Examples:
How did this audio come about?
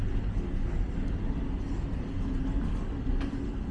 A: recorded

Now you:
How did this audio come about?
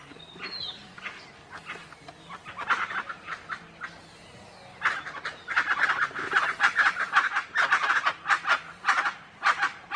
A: recorded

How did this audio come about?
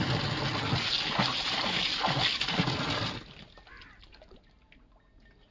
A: recorded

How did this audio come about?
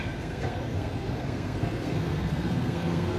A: remade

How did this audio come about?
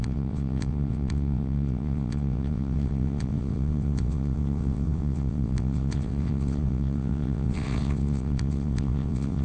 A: remade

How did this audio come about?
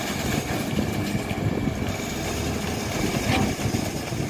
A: recorded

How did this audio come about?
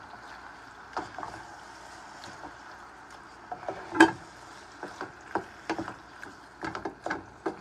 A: recorded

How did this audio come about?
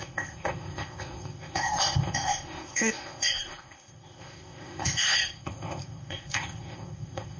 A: remade